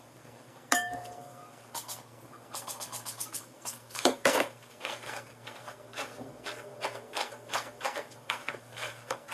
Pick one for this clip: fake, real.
fake